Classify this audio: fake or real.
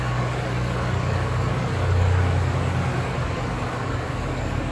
fake